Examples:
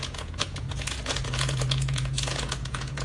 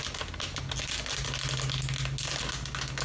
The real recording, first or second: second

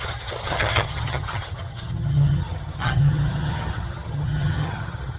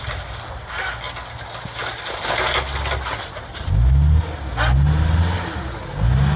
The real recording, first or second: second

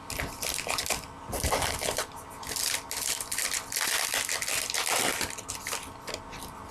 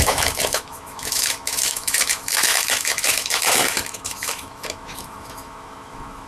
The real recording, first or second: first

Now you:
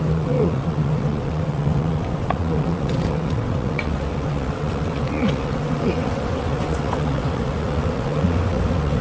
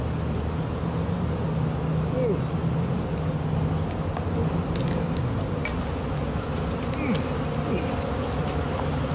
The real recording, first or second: second